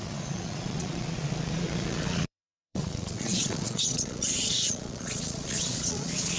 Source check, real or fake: fake